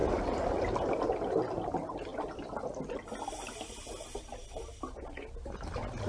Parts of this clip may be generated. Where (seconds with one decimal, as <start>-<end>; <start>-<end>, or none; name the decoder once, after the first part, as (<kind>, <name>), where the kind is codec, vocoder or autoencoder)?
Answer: none